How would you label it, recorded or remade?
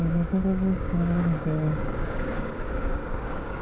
remade